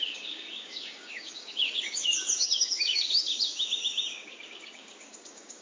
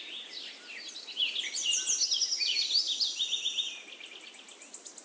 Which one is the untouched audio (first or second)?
second